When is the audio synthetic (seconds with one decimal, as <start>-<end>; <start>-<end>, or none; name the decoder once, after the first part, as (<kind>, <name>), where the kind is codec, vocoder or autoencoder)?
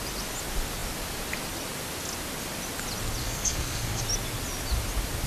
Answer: 3.2-4.0 (codec, SNAC)